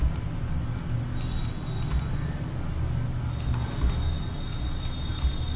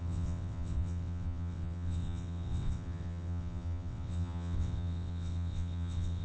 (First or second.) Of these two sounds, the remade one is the second